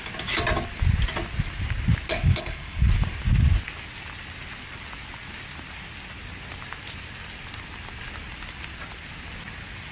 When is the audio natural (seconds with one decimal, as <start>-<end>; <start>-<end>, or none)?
0.0-2.1; 2.9-9.9

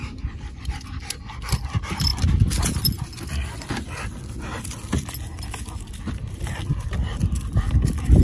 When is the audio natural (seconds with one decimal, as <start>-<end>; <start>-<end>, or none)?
1.0-8.2

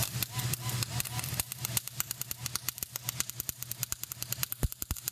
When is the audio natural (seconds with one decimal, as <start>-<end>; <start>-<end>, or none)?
2.2-5.1

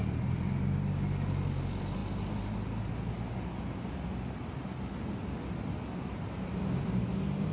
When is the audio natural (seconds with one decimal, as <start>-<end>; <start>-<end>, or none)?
0.0-7.5

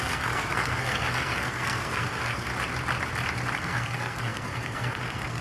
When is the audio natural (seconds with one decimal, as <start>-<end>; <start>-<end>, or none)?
2.5-3.6

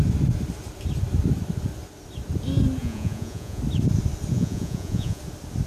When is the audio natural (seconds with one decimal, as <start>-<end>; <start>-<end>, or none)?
0.0-2.8; 3.6-4.3; 5.2-5.7

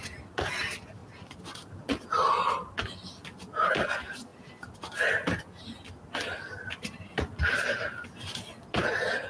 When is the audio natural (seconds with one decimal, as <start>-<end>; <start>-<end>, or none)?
0.0-9.3

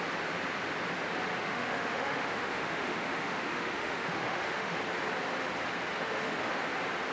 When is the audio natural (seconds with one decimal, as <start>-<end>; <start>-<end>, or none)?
0.0-1.4; 4.8-5.9; 6.6-7.1